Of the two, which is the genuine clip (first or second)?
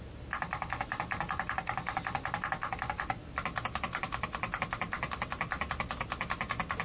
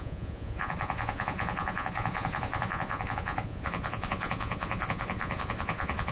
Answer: first